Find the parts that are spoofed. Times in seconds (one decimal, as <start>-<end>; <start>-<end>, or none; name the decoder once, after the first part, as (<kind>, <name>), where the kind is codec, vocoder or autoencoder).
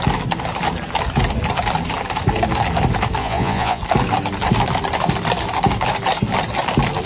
3.2-3.8 (vocoder, Vocos)